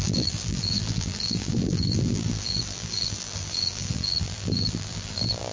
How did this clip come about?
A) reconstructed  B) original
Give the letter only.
A